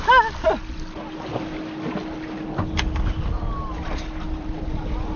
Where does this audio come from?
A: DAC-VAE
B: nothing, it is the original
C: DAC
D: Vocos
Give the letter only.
B